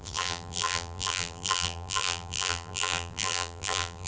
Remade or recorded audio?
remade